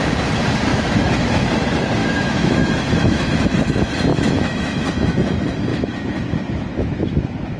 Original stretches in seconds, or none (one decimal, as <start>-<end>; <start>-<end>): 0.0-0.7; 1.4-2.0; 3.6-4.1; 5.1-5.7